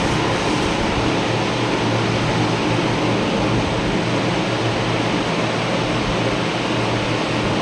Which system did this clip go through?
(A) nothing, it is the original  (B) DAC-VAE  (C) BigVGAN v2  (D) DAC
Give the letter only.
A